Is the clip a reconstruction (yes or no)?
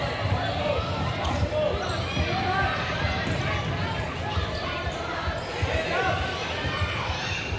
no